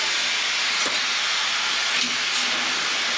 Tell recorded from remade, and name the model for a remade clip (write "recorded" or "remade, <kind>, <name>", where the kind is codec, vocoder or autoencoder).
recorded